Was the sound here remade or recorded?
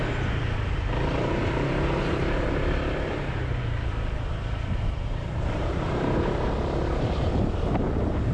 remade